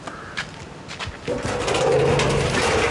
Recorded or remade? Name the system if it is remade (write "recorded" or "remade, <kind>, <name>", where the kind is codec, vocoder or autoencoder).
recorded